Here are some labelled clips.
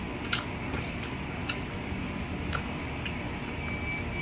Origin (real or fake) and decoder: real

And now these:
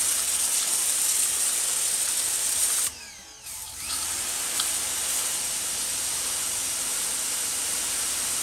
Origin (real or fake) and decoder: real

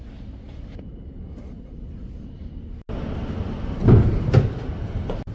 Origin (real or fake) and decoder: real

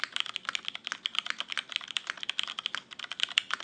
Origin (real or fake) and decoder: real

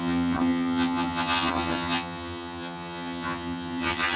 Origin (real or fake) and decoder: fake, vocoder, HiFi-GAN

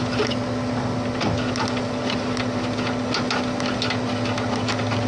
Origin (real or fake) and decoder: real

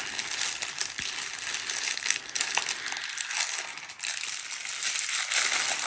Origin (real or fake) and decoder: real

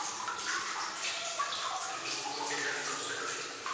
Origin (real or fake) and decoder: fake, vocoder, BigVGAN v2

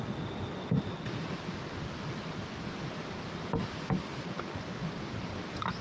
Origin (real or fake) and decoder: real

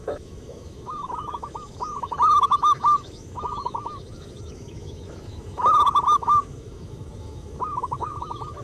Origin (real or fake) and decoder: fake, autoencoder, DAC-VAE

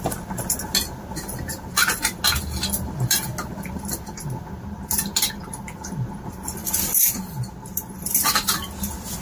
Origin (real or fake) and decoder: real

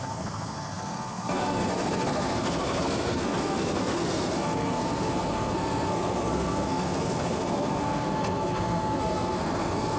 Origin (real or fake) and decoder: fake, codec, SNAC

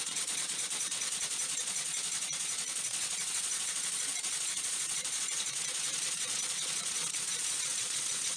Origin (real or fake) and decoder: fake, vocoder, Vocos